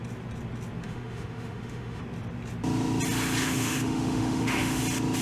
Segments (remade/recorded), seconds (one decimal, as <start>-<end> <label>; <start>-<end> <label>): 0.0-0.8 recorded; 0.8-2.0 remade; 2.0-3.4 recorded; 3.4-4.8 remade; 4.8-5.2 recorded